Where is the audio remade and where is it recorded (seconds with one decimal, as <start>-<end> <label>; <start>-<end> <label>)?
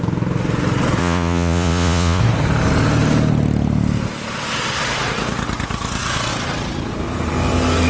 0.0-1.0 recorded; 1.0-2.2 remade; 2.2-7.9 recorded